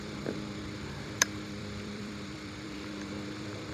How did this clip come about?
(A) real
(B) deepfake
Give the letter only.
B